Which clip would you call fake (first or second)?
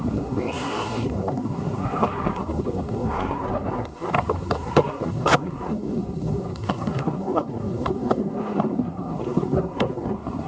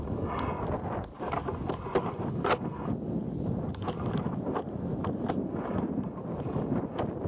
first